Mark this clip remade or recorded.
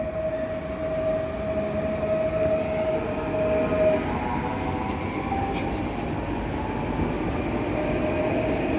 recorded